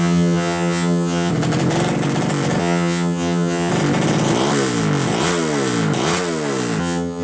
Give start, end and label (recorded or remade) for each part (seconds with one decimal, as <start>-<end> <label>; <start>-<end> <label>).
0.0-1.3 remade; 1.3-2.6 recorded; 2.6-3.7 remade; 3.7-6.8 recorded; 6.8-7.2 remade